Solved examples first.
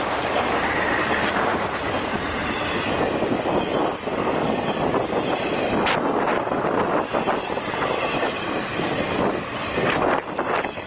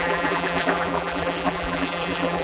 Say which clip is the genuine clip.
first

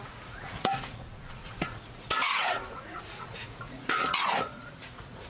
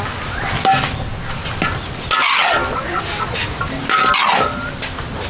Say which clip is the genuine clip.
second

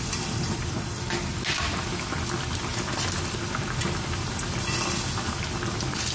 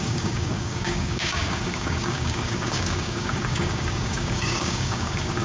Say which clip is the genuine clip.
first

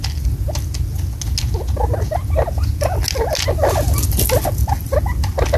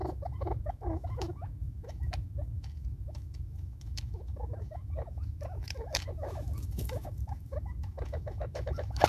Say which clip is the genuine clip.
first